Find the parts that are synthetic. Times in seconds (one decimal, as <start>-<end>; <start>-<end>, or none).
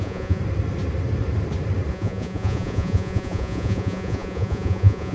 0.0-0.4; 1.9-5.1